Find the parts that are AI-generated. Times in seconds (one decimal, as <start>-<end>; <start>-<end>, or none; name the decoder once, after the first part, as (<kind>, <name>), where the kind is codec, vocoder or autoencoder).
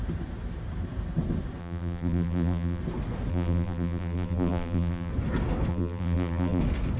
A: 1.6-2.8 (vocoder, BigVGAN v2); 3.3-5.1; 5.7-6.6